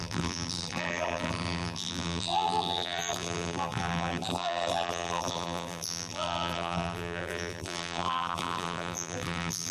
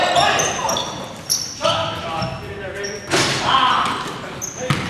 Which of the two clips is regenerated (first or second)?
first